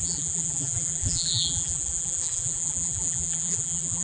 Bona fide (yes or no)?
no